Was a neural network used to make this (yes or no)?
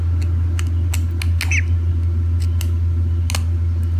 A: no